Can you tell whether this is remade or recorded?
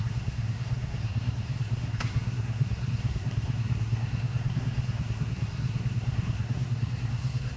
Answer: remade